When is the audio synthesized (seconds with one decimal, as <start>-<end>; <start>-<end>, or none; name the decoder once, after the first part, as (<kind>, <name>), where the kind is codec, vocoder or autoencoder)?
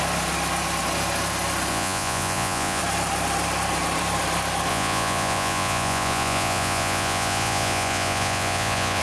1.7-2.8 (vocoder, Vocos); 4.7-9.0